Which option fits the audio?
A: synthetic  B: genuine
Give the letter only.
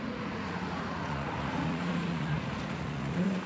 A